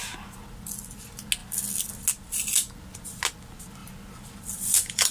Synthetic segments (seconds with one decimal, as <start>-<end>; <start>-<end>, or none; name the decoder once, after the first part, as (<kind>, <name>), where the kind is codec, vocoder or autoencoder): 3.8-5.1 (vocoder, BigVGAN v2)